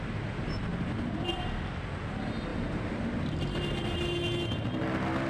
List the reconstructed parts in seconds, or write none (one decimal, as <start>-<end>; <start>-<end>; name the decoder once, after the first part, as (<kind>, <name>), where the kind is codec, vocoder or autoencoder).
2.5-3.0 (vocoder, BigVGAN v2)